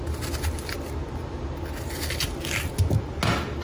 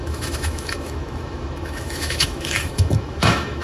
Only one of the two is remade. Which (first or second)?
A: second